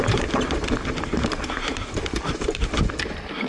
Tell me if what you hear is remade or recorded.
recorded